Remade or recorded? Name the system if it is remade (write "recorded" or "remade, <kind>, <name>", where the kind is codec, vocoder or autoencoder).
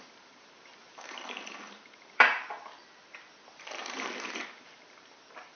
remade, vocoder, BigVGAN v2